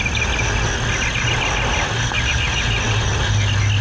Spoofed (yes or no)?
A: no